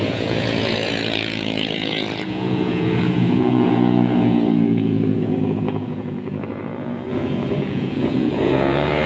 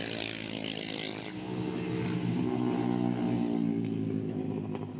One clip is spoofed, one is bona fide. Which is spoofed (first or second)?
first